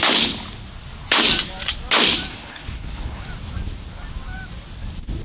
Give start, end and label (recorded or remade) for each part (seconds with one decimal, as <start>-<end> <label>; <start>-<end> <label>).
0.0-2.3 recorded; 2.3-3.3 remade; 3.3-5.2 recorded